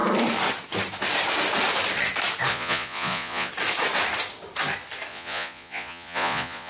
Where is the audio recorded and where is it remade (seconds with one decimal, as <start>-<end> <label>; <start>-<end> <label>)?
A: 0.0-2.5 recorded; 2.5-3.5 remade; 3.5-5.1 recorded; 5.1-6.7 remade